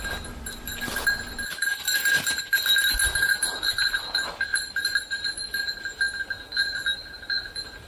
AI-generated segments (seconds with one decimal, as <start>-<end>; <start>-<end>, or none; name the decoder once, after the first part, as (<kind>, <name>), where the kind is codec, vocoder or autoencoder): none